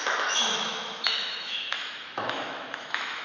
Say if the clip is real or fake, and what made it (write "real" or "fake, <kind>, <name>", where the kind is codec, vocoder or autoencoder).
fake, autoencoder, DAC-VAE